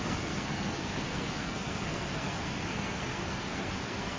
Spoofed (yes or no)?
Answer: yes